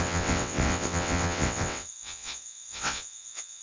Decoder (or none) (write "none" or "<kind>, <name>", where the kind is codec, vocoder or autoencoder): vocoder, WaveNeXt